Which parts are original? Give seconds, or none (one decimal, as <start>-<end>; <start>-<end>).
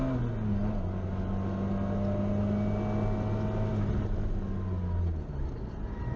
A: 0.0-6.2